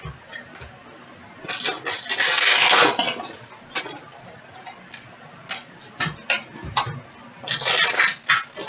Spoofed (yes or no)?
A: no